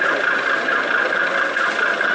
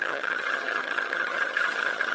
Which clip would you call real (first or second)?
first